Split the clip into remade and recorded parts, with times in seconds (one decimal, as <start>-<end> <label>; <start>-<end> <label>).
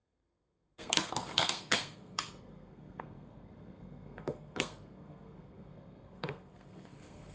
0.0-7.3 remade